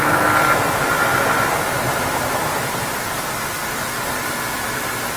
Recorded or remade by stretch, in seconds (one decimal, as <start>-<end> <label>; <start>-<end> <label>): 0.0-5.2 recorded